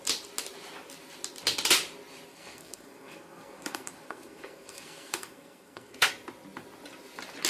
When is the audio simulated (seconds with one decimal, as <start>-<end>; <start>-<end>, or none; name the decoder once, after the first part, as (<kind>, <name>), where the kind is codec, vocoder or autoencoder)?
2.3-6.1 (codec, SNAC)